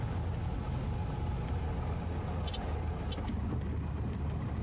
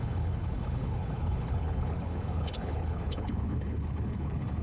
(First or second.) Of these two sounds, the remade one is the second